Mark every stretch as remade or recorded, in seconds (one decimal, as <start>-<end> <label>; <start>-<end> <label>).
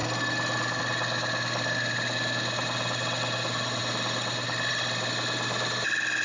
0.0-6.2 recorded